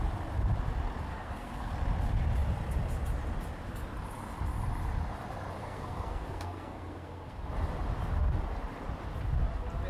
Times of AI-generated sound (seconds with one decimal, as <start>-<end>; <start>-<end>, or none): 1.1-1.7; 5.6-7.4